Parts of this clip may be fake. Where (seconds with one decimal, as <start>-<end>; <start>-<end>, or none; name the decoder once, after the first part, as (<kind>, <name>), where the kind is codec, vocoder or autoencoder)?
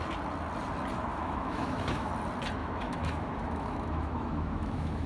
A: 1.1-2.1 (autoencoder, DAC-VAE); 2.6-5.1